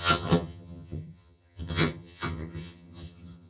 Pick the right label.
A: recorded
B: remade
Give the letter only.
B